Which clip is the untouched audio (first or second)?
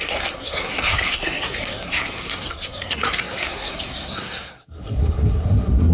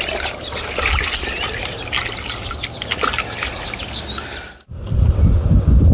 second